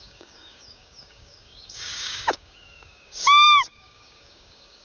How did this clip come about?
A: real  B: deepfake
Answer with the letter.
B